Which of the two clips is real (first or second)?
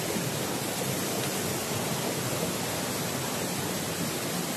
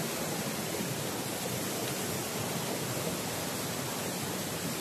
first